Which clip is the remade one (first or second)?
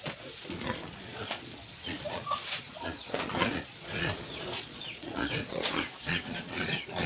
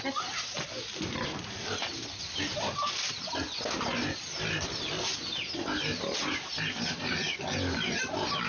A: first